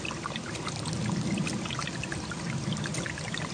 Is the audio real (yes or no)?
yes